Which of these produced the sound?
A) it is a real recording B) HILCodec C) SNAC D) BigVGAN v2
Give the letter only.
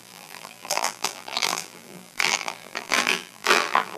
D